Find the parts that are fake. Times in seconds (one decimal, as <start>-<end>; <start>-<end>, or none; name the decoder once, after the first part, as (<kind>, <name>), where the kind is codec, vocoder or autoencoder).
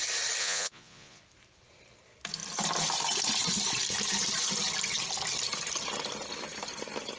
0.4-1.2 (vocoder, Vocos)